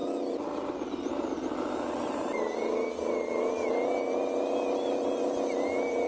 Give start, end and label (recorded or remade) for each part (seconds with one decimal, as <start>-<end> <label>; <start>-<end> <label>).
0.0-6.1 recorded